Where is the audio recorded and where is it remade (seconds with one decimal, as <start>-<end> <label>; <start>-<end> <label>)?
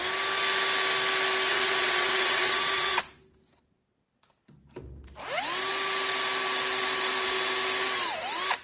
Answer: 0.0-1.5 recorded; 1.5-3.0 remade; 3.0-8.6 recorded